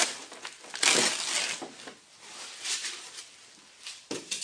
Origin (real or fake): real